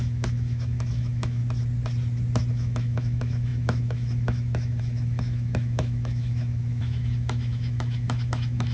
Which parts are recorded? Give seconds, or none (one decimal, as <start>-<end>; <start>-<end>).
1.4-2.5